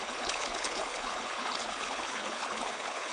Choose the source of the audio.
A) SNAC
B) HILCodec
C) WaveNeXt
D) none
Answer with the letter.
B